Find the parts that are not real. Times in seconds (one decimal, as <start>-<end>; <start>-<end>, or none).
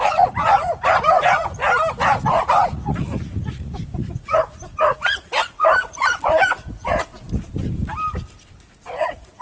0.0-1.6; 2.2-7.1; 9.0-9.4